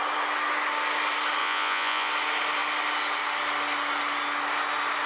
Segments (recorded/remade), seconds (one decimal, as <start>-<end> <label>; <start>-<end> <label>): 0.0-1.4 recorded; 1.4-2.1 remade; 2.1-5.1 recorded